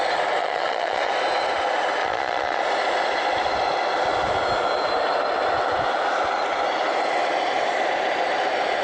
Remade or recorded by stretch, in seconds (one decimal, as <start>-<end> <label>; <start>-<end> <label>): 0.0-0.4 recorded; 0.4-1.1 remade; 1.1-2.0 recorded; 2.0-2.6 remade; 2.6-8.8 recorded